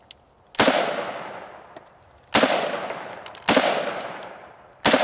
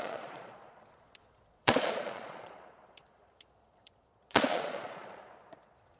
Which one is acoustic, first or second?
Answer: first